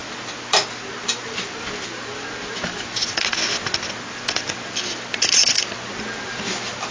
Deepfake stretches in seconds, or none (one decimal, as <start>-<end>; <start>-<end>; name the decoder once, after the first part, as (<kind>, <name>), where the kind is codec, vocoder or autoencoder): none

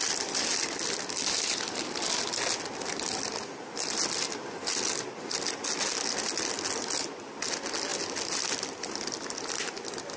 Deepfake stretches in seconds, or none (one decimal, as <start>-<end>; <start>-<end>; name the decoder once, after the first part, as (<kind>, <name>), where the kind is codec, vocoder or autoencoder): none

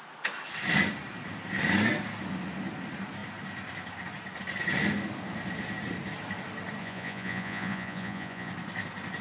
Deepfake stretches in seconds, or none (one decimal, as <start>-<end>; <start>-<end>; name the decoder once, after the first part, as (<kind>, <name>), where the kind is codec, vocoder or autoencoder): 6.8-8.5 (vocoder, Vocos)

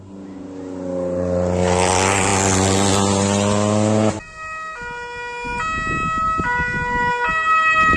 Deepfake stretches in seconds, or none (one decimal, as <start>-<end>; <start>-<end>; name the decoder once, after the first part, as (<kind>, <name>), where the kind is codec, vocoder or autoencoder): none